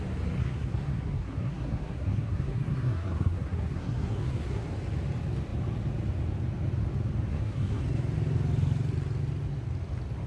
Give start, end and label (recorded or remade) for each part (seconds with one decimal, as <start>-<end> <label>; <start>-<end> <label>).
0.0-0.4 recorded; 0.4-4.7 remade; 4.7-7.3 recorded; 7.3-7.8 remade; 7.8-10.3 recorded